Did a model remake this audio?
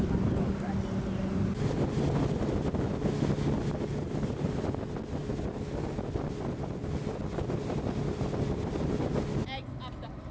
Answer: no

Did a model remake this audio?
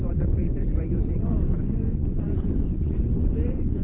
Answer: yes